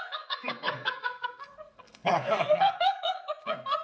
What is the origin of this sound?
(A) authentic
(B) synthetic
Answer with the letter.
B